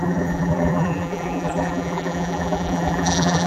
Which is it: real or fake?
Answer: fake